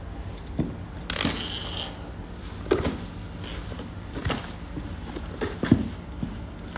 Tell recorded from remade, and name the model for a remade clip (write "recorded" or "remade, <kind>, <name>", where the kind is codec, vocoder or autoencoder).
recorded